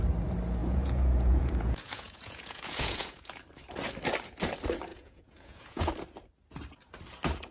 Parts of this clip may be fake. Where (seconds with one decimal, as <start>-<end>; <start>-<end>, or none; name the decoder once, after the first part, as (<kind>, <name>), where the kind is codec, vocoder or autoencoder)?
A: 0.6-3.4 (vocoder, Vocos); 4.9-5.9